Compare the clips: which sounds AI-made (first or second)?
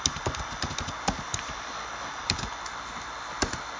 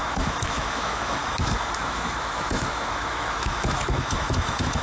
second